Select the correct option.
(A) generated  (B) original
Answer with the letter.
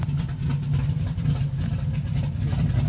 B